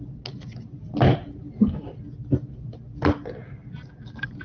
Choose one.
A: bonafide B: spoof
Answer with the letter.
A